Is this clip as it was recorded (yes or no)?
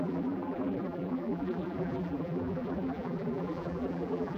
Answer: no